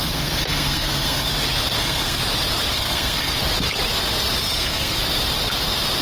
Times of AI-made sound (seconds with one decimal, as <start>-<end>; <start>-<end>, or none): 0.0-1.3; 1.8-2.2; 2.7-3.4; 4.4-5.0